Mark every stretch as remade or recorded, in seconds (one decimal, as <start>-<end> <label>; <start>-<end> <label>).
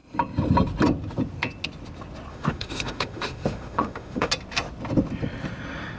0.0-2.3 recorded; 2.3-4.3 remade; 4.3-6.0 recorded